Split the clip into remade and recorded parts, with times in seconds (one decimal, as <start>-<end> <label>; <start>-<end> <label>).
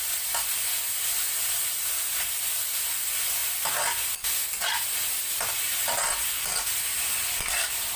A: 0.0-8.0 recorded